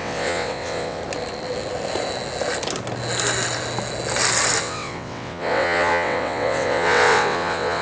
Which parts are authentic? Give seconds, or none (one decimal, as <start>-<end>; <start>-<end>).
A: 1.0-4.6

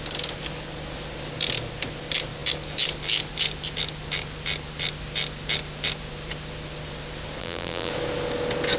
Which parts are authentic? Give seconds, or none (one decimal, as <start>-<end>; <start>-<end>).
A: 0.0-7.4; 7.9-8.8

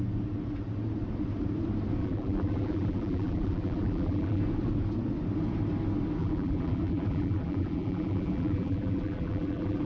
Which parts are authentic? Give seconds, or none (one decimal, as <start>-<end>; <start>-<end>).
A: 0.0-2.0; 4.4-6.2

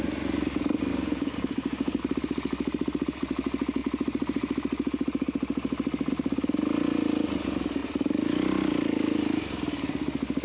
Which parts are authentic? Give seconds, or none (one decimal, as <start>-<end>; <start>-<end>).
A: 0.0-0.9; 2.0-10.4

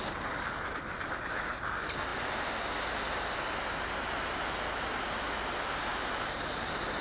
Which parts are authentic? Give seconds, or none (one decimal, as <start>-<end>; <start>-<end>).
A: 0.0-7.0

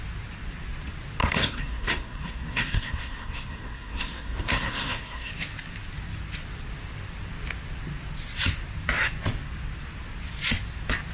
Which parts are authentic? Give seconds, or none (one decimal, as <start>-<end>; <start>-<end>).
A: 0.0-1.2; 5.3-11.1

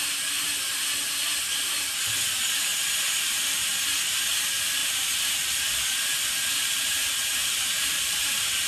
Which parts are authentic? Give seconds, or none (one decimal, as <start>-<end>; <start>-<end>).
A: 0.0-4.8; 5.8-7.4